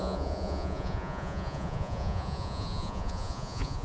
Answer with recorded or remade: remade